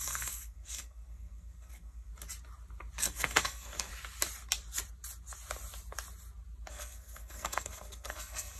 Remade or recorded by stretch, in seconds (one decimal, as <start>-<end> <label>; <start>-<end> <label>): 0.0-2.1 remade; 2.1-3.0 recorded; 3.0-3.9 remade; 3.9-6.7 recorded; 6.7-8.6 remade